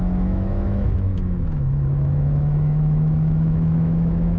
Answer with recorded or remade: remade